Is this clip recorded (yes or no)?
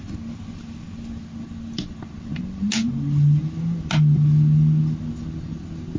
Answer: yes